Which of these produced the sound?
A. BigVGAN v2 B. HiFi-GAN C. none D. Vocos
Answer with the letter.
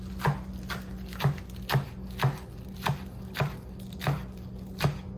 C